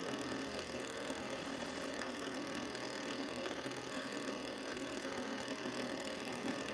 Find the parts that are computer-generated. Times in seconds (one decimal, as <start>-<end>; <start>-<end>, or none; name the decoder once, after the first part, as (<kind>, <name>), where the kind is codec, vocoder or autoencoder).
0.0-1.4 (codec, SNAC); 1.9-6.7